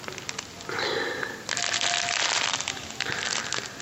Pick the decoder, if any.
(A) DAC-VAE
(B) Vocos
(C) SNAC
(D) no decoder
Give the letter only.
D